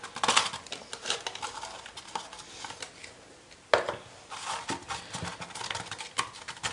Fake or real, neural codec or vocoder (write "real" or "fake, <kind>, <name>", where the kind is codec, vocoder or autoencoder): real